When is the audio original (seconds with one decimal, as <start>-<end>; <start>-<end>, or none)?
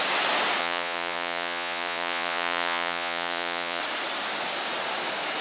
0.0-0.6; 3.8-5.4